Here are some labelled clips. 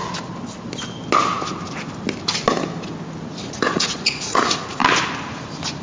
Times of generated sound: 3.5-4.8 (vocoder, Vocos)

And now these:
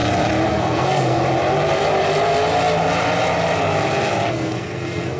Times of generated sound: 0.5-1.2 (codec, SNAC); 4.3-5.2

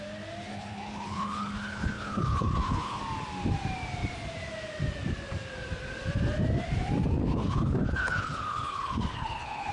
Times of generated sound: 0.5-3.0 (codec, HILCodec); 7.2-9.7